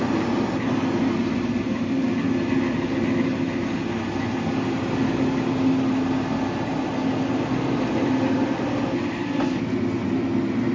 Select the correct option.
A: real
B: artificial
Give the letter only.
A